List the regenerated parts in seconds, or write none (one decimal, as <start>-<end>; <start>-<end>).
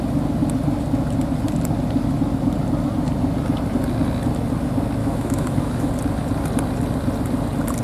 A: 5.0-5.9